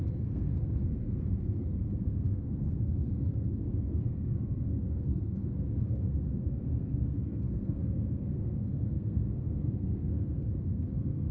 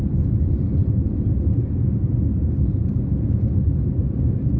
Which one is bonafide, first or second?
second